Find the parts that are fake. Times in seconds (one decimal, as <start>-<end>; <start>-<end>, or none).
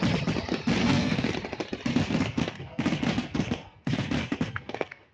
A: 0.8-1.3; 1.9-5.1